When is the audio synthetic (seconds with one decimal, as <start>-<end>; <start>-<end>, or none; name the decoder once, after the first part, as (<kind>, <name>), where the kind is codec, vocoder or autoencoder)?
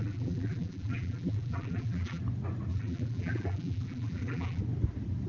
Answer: 0.0-2.2 (vocoder, BigVGAN v2); 2.7-4.6